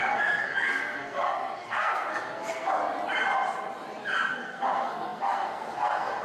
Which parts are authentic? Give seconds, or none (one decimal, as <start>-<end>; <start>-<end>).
2.8-4.3